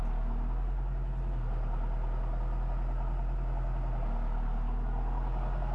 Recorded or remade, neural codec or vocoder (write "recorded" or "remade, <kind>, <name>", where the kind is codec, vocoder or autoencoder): recorded